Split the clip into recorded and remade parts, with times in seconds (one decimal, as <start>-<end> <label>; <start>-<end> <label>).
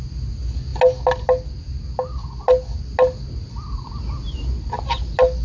0.0-5.4 recorded